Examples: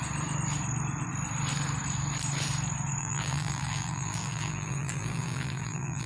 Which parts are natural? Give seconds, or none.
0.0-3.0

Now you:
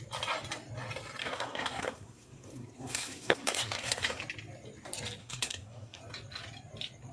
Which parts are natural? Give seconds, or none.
0.0-1.2; 4.2-5.2; 6.0-7.1

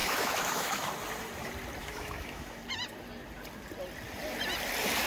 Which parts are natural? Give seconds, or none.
0.9-1.8; 2.6-5.1